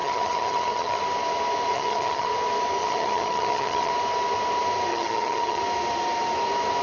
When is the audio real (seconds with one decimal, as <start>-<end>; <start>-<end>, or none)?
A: 1.0-1.7; 2.3-2.8; 3.9-4.9; 5.6-6.8